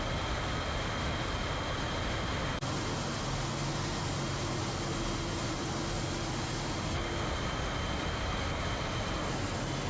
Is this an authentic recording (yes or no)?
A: yes